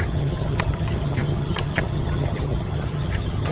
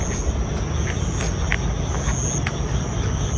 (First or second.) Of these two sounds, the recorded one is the second